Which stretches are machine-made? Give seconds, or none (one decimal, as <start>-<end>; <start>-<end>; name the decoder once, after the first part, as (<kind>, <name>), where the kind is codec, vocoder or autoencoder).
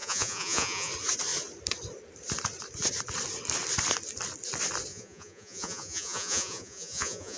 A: 0.0-0.9 (vocoder, Vocos); 4.9-7.4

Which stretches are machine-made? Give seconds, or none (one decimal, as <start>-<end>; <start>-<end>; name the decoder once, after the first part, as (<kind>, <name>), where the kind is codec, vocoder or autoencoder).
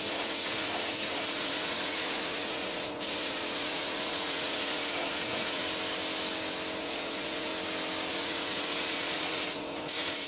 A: 0.0-5.6 (vocoder, Vocos); 6.8-7.5; 8.1-10.3